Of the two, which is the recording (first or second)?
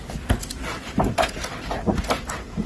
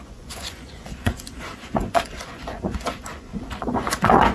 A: first